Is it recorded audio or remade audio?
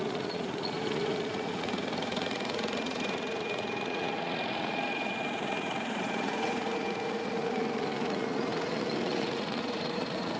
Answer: remade